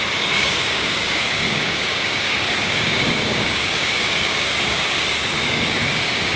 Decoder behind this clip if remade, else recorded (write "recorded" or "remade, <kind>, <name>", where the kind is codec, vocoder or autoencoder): remade, codec, DAC